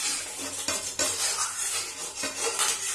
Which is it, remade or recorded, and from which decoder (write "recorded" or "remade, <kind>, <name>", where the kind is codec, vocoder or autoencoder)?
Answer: recorded